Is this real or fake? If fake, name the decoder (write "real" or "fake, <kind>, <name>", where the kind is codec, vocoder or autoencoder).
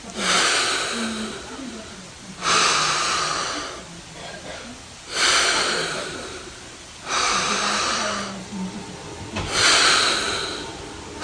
real